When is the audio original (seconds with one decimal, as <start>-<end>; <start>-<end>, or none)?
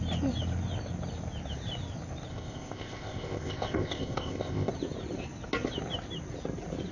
0.0-2.3; 4.7-6.9